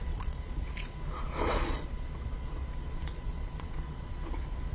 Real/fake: fake